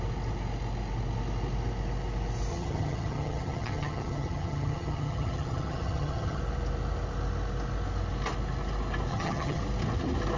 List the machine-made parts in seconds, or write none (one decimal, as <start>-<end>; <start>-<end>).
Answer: 2.5-6.4; 9.1-9.6